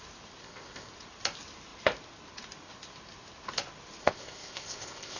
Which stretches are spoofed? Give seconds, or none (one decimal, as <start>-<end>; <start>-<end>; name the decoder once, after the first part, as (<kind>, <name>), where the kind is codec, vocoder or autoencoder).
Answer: 0.4-0.9 (codec, ZipCodec); 4.0-5.2